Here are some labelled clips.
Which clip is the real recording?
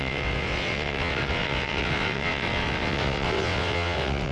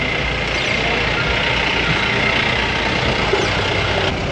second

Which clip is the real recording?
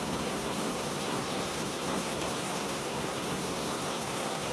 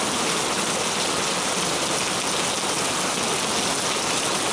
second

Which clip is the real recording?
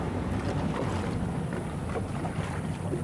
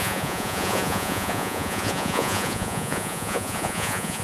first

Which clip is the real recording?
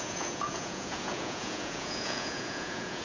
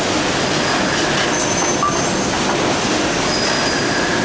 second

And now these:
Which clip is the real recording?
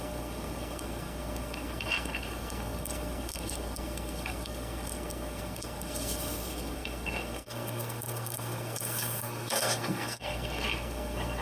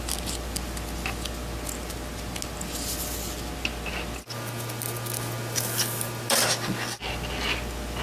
second